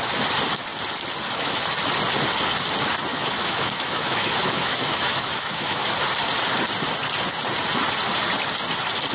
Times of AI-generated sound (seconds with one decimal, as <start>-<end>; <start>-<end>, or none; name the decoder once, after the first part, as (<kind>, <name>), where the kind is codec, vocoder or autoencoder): 3.1-5.9 (autoencoder, DAC-VAE)